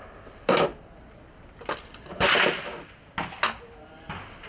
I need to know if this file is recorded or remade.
recorded